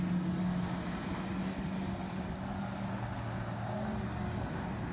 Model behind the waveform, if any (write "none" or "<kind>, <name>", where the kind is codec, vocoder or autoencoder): none